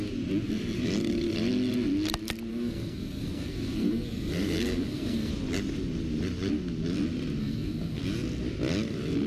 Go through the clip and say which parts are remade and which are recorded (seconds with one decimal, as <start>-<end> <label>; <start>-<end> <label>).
0.0-2.5 recorded; 2.5-5.3 remade; 5.3-7.4 recorded; 7.4-8.0 remade; 8.0-9.3 recorded